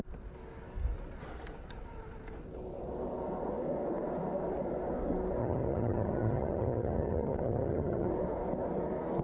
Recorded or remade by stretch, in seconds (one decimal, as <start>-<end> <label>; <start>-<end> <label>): 0.0-5.4 recorded; 5.4-8.1 remade; 8.1-9.2 recorded